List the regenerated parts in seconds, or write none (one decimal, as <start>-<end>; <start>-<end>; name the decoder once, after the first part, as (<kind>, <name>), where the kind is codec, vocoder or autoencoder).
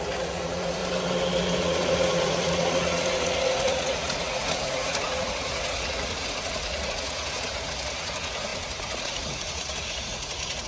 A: 0.0-0.8 (vocoder, Vocos); 1.6-10.7